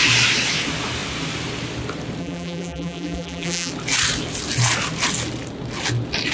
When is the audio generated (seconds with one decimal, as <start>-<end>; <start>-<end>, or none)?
2.2-3.7